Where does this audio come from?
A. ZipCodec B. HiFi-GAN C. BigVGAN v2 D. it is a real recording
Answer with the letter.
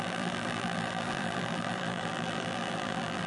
C